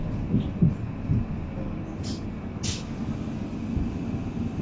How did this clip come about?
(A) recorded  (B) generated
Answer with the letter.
A